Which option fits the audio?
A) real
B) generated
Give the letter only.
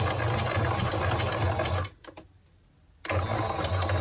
A